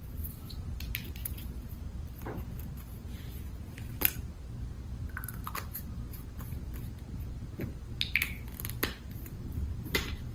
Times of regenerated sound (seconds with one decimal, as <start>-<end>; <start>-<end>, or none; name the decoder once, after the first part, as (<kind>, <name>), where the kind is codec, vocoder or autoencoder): 1.2-1.7 (vocoder, Vocos)